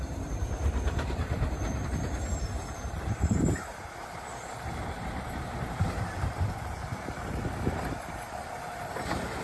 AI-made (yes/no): yes